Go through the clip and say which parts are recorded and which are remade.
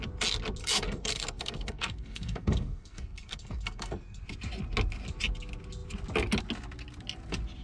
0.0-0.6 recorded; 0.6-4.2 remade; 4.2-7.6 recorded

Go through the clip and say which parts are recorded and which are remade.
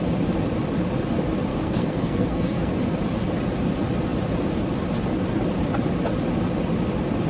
0.0-1.5 recorded; 1.5-2.8 remade; 2.8-7.3 recorded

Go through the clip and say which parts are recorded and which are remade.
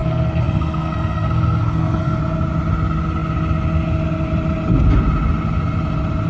0.0-2.2 remade; 2.2-6.3 recorded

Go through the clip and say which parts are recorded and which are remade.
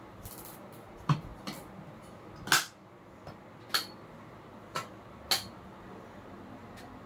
0.0-7.1 recorded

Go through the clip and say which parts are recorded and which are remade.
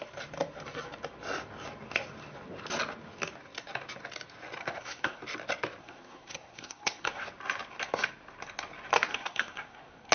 0.0-4.6 recorded; 4.6-5.2 remade; 5.2-5.8 recorded; 5.8-7.2 remade; 7.2-9.1 recorded; 9.1-10.1 remade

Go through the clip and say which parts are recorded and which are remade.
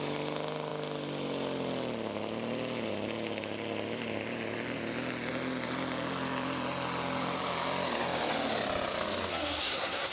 0.0-9.3 recorded; 9.3-10.1 remade